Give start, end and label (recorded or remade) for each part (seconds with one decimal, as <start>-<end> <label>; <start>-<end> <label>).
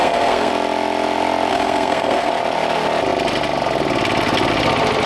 0.0-0.5 remade; 0.5-1.5 recorded; 1.5-2.3 remade; 2.3-5.1 recorded